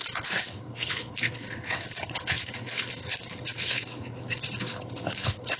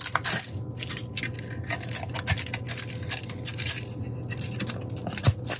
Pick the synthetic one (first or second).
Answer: first